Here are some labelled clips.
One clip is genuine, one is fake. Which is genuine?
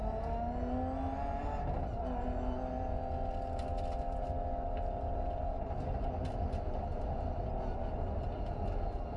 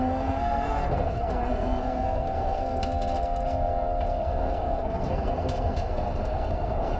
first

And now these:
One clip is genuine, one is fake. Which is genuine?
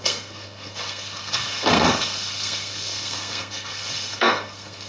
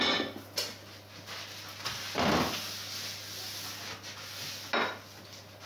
second